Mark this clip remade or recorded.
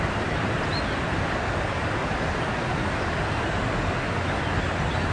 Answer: recorded